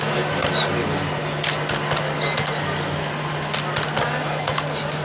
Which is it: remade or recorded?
recorded